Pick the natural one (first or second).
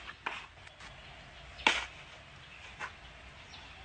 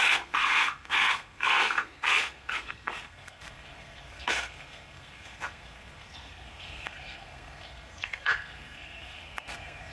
first